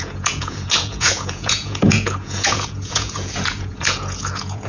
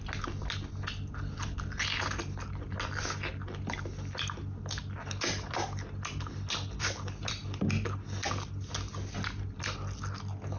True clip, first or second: second